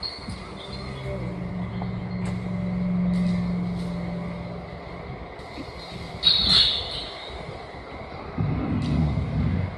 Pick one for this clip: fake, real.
real